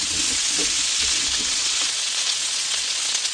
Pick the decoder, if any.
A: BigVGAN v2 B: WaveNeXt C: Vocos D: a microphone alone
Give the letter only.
B